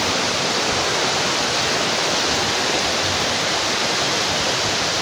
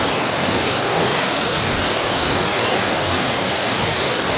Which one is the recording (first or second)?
first